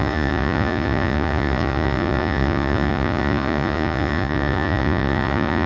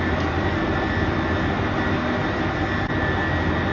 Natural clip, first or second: second